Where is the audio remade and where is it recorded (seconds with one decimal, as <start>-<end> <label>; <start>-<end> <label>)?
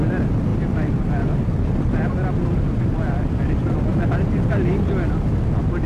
0.0-5.9 recorded